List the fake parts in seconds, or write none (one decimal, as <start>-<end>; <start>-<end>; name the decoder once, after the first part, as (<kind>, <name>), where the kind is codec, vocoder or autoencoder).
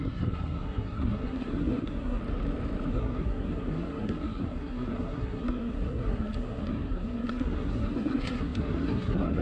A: 0.0-2.2 (codec, SNAC); 2.9-9.4